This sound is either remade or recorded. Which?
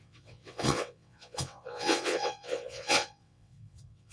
remade